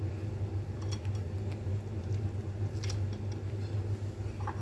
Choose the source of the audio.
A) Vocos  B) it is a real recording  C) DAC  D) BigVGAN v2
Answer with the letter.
B